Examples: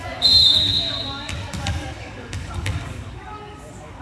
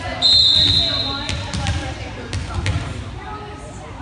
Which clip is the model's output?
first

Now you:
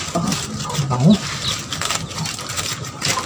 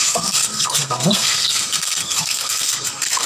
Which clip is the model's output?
second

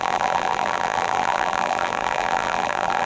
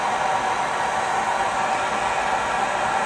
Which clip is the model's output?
first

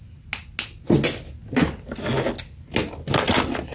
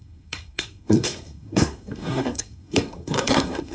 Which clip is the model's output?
second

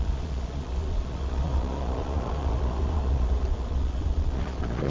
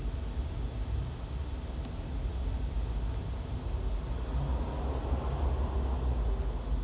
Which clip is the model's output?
first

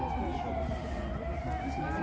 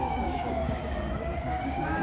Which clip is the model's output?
second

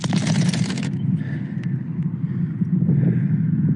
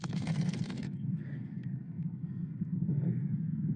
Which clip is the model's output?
second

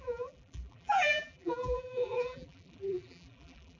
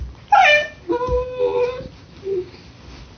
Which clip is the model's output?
first